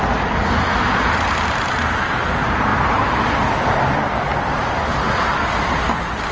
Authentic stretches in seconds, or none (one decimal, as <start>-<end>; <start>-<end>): 0.0-6.3